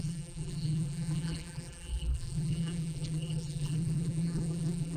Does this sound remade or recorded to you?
remade